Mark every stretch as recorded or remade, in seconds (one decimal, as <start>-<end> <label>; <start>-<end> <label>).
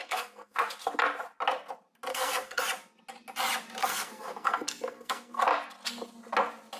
0.0-0.6 remade; 0.6-2.1 recorded; 2.1-2.6 remade; 2.6-3.8 recorded; 3.8-5.4 remade; 5.4-6.8 recorded